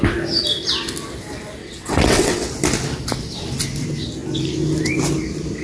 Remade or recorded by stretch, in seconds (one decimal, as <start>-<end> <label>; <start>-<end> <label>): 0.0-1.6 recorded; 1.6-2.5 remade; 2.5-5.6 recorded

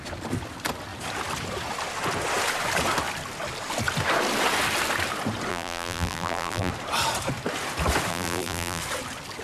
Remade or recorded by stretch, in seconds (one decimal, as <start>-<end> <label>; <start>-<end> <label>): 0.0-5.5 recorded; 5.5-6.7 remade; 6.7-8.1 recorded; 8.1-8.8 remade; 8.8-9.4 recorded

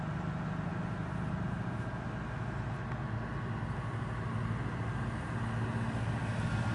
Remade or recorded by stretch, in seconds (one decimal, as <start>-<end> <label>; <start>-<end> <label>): 0.0-6.7 recorded

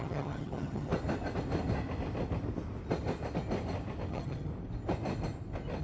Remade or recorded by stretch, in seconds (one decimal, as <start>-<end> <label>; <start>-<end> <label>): 0.0-0.9 remade; 0.9-4.1 recorded; 4.1-4.5 remade; 4.5-5.8 recorded

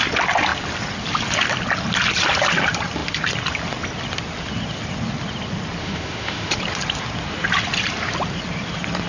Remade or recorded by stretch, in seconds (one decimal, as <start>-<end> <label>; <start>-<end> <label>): 0.0-5.8 recorded; 5.8-6.5 remade; 6.5-9.1 recorded

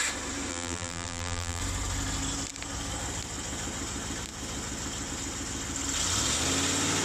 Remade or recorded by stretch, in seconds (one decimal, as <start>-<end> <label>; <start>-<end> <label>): 0.0-0.5 recorded; 0.5-1.6 remade; 1.6-7.0 recorded

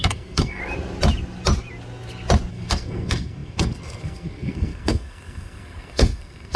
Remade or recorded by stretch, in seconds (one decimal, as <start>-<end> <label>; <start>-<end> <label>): 0.0-0.6 remade; 0.6-2.5 recorded; 2.5-6.6 remade